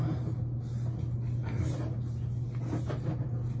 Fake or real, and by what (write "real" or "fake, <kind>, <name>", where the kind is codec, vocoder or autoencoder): real